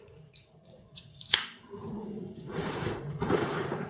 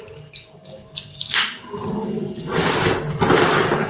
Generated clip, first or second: first